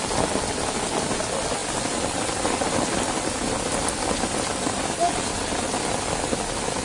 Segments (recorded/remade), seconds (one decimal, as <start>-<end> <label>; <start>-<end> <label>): 0.0-6.8 recorded